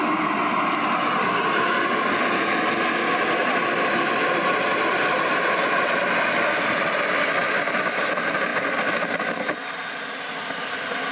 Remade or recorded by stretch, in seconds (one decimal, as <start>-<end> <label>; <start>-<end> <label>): 0.0-11.1 recorded